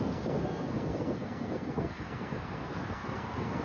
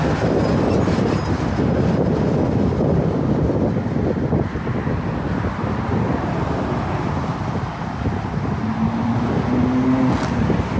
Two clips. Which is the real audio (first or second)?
second